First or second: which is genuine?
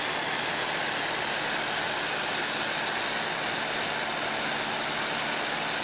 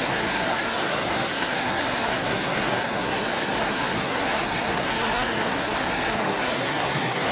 first